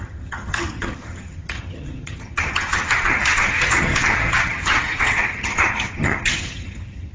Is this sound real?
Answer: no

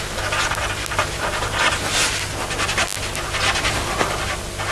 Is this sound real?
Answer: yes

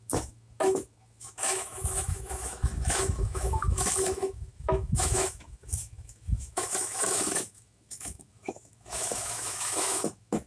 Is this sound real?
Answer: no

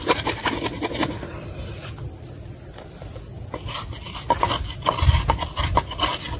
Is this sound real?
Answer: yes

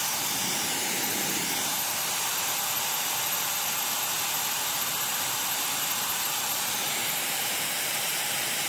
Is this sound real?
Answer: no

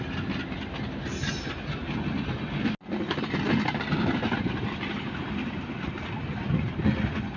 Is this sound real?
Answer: yes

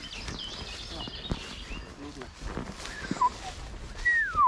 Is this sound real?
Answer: yes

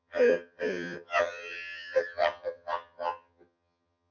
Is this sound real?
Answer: no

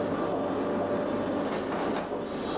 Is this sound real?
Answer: yes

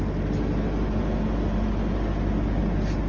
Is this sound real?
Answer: yes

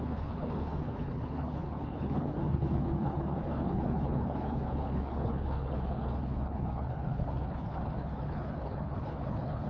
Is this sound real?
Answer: no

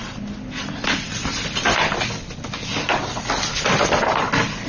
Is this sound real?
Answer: yes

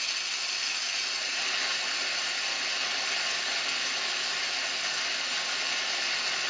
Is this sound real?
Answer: yes